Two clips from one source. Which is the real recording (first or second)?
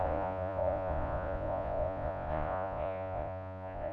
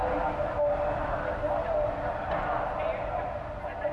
second